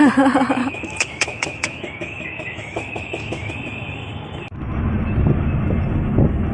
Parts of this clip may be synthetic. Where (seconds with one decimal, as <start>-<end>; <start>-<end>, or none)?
0.6-3.5